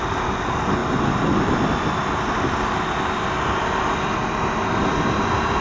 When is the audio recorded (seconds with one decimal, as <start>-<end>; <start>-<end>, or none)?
0.0-5.6

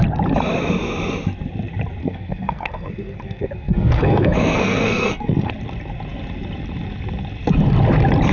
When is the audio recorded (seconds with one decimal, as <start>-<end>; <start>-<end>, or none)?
0.0-2.0; 5.5-8.3

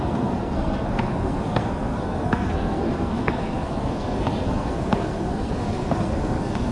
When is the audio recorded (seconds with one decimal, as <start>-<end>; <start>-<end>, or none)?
none

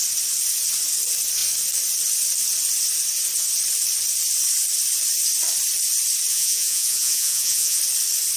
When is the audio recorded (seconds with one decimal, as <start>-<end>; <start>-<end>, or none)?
0.0-6.3; 7.8-8.4